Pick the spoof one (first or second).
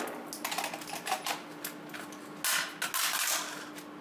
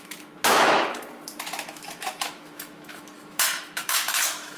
second